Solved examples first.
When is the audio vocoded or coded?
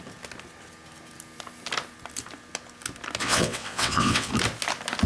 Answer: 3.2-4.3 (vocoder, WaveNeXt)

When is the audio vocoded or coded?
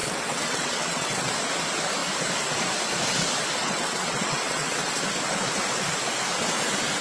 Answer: 0.0-1.3 (vocoder, WaveNeXt); 3.6-5.0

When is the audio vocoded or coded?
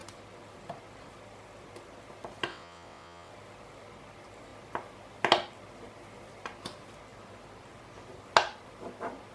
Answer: 2.5-3.3 (vocoder, WaveNeXt)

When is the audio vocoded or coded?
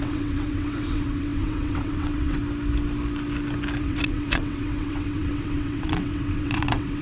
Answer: 0.0-2.4 (vocoder, WaveNeXt); 3.8-7.0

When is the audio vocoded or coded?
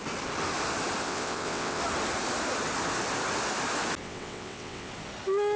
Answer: 1.0-1.8 (vocoder, WaveNeXt); 4.0-4.9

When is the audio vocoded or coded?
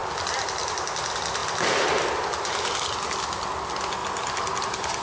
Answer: none